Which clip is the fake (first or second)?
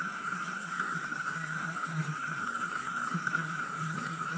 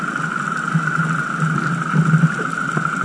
first